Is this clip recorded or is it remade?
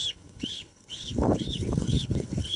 remade